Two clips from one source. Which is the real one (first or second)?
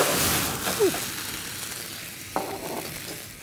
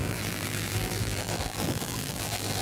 first